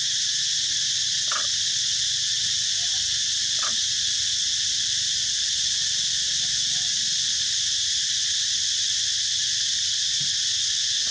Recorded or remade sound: recorded